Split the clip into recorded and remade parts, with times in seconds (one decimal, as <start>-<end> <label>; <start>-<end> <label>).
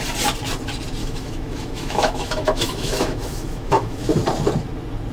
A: 0.0-1.0 recorded; 1.0-4.1 remade; 4.1-5.1 recorded